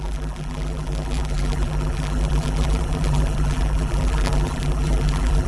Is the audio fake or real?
fake